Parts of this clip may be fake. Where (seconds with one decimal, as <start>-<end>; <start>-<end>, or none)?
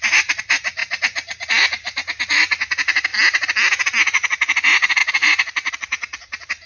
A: 0.0-3.1; 4.0-6.7